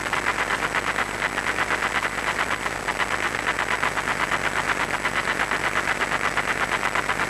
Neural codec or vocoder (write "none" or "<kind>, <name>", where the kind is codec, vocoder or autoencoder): none